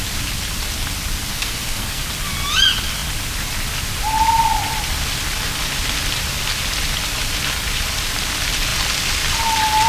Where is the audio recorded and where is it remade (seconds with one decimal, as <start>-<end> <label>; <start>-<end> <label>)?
0.0-1.3 recorded; 1.3-2.0 remade; 2.0-9.9 recorded

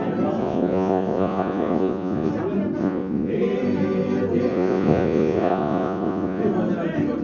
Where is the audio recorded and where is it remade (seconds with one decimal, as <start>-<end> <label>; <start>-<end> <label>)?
0.0-0.4 recorded; 0.4-2.3 remade; 2.3-2.8 recorded; 2.8-3.3 remade; 3.3-4.5 recorded; 4.5-6.4 remade; 6.4-7.2 recorded

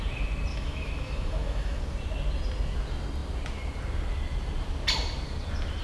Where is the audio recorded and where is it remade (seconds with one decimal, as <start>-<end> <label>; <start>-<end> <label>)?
0.0-0.5 recorded; 0.5-1.8 remade; 1.8-5.8 recorded

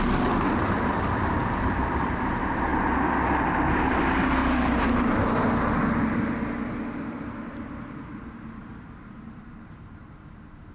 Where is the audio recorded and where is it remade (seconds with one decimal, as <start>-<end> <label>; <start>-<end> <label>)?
0.0-2.7 remade; 2.7-3.8 recorded; 3.8-4.4 remade; 4.4-7.6 recorded; 7.6-10.7 remade

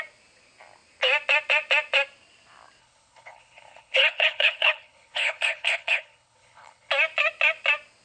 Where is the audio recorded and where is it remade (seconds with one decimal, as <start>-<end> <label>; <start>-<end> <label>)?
0.0-2.8 recorded; 2.8-6.9 remade; 6.9-8.0 recorded

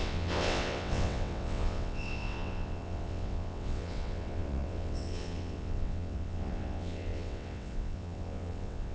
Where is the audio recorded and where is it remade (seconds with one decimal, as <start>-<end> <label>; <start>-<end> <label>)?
0.0-8.9 remade

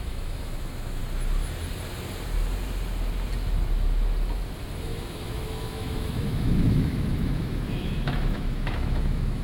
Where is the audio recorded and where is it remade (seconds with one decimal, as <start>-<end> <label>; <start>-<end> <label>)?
0.0-1.0 remade; 1.0-4.8 recorded; 4.8-9.4 remade